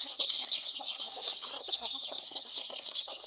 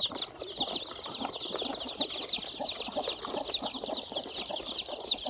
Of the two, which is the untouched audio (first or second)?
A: second